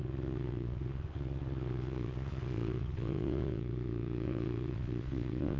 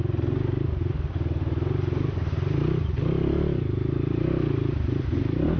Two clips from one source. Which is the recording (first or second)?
second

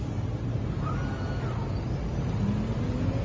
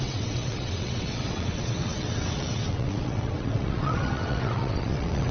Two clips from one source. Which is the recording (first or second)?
first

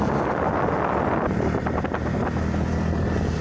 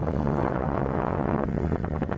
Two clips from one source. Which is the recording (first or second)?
first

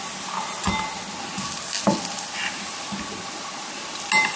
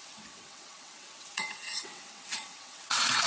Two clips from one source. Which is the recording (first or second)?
first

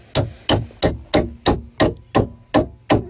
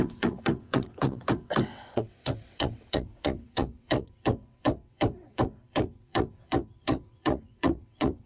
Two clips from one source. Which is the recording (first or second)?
first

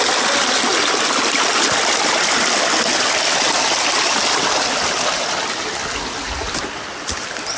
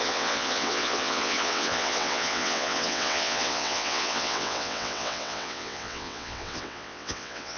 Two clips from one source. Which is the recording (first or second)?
first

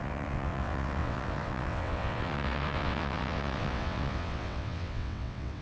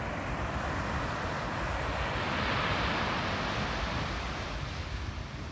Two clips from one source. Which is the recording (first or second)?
second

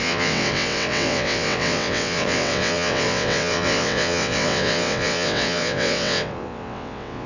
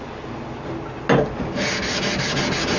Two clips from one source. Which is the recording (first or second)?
second